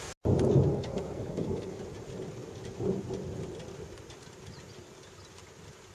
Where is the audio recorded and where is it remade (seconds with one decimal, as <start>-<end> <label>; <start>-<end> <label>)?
0.0-0.7 recorded; 0.7-1.8 remade; 1.8-5.9 recorded